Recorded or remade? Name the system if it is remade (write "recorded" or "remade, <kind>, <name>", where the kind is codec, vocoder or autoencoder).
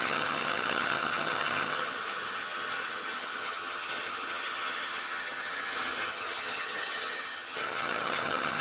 remade, vocoder, HiFi-GAN